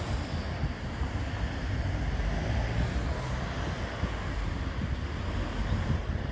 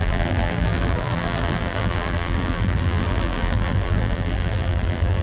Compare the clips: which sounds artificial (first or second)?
second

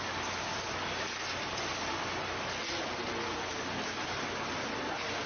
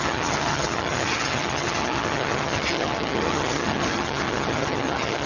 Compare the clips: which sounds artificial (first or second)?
second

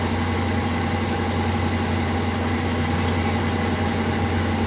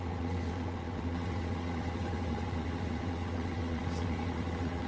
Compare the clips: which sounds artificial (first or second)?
second